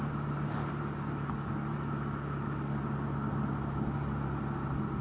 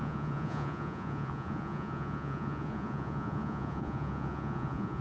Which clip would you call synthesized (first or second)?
second